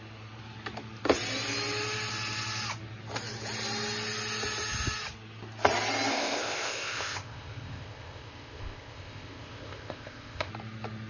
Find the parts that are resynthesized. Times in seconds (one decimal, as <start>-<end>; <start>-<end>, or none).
6.1-10.5